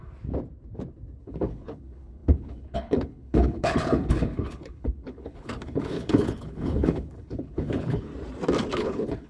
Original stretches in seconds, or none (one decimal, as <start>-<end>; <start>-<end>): 0.0-1.2; 8.1-8.7